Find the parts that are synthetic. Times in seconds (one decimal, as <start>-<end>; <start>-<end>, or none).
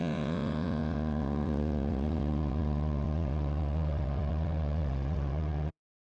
0.0-6.1